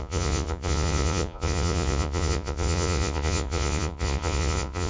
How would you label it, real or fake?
fake